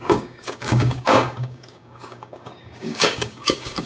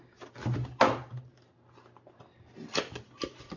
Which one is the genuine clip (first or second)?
second